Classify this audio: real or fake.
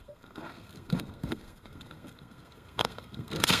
fake